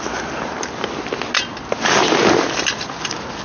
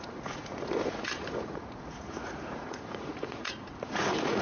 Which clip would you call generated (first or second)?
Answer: second